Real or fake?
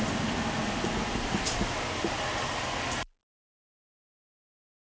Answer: real